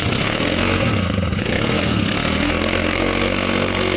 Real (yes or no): no